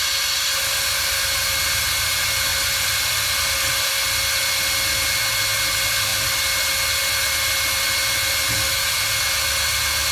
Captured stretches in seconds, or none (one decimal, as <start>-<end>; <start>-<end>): 0.0-2.5; 3.9-10.1